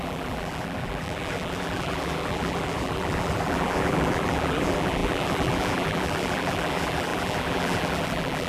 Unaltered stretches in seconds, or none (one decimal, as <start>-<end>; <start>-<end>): none